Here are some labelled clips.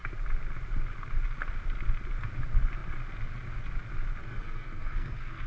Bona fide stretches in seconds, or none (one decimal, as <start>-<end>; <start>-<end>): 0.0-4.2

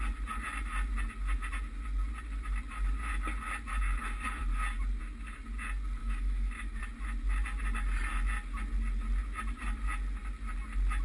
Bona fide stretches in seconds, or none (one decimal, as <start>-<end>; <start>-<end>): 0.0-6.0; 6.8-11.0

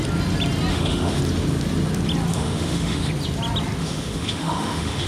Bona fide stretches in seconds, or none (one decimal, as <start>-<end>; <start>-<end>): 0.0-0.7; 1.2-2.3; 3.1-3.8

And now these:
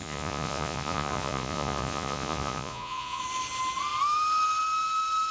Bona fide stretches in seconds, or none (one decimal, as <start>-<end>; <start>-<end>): 3.2-5.3

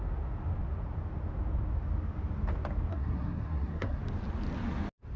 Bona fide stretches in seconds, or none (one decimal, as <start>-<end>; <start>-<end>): 0.0-2.9; 4.0-5.2